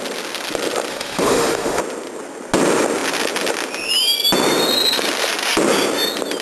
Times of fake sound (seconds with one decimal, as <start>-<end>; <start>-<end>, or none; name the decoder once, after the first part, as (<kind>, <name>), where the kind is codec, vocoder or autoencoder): 0.9-1.8 (autoencoder, DAC-VAE)